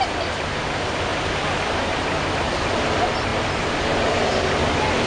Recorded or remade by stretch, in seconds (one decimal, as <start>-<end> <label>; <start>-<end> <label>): 0.0-5.1 recorded